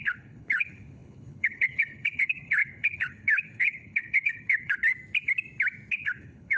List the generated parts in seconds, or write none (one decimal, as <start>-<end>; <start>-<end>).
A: 0.0-4.9; 5.9-6.6